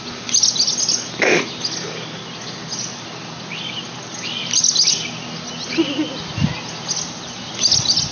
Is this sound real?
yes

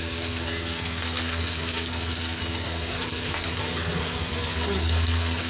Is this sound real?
no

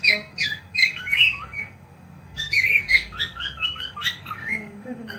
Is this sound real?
no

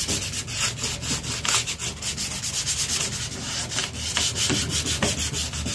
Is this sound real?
yes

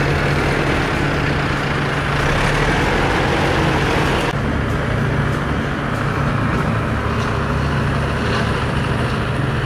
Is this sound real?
yes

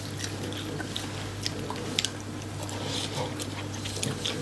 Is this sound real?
yes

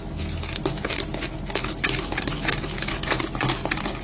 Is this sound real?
yes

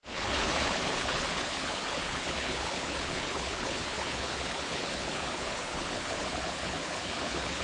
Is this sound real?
no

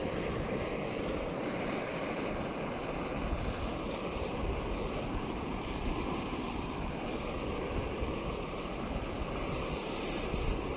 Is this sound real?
yes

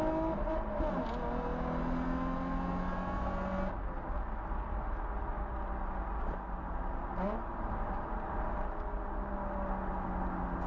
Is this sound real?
yes